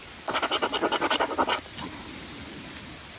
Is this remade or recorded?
recorded